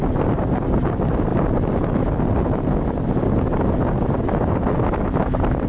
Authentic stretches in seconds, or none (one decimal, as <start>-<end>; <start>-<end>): 0.0-5.7